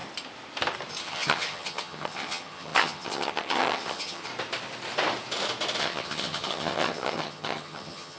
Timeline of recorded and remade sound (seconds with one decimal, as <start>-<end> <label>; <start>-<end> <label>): 0.0-1.0 recorded; 1.0-4.3 remade; 4.3-5.8 recorded; 5.8-8.2 remade